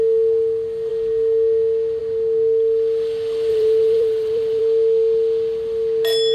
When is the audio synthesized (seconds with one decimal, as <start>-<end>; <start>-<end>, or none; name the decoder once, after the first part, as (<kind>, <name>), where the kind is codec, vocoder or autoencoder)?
3.5-4.6 (vocoder, BigVGAN v2)